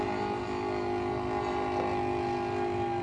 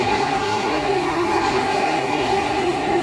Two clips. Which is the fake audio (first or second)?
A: second